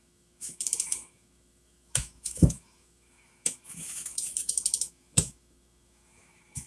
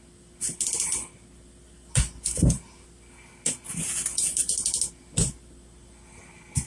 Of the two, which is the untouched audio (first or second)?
second